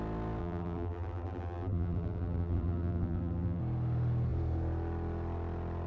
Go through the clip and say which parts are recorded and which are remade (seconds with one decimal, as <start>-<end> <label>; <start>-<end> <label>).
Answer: 0.0-0.4 recorded; 0.4-3.6 remade; 3.6-5.9 recorded